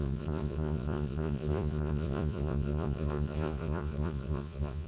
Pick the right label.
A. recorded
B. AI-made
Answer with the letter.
B